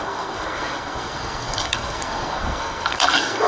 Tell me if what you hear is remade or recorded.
remade